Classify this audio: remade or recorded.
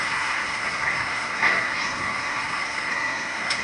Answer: remade